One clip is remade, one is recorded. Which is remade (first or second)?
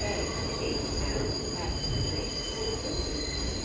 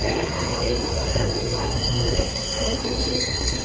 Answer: second